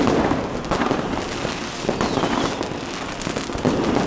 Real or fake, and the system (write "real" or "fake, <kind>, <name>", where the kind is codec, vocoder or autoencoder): real